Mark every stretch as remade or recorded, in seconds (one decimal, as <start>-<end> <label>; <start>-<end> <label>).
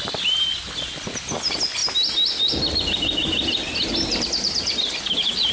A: 0.0-5.5 recorded